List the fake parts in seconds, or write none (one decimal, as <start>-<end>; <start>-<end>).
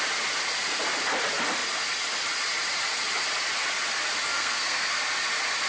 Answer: 4.2-5.0